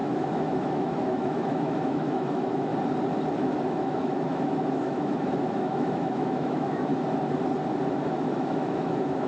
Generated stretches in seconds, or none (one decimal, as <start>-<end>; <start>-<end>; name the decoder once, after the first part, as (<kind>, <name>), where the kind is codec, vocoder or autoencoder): 0.0-2.7 (autoencoder, DAC-VAE); 3.4-6.9; 8.0-9.3